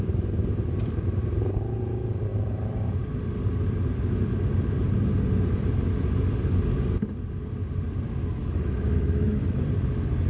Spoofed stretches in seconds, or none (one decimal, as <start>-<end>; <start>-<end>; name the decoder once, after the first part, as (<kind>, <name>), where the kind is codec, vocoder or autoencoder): 8.4-9.6 (autoencoder, DAC-VAE)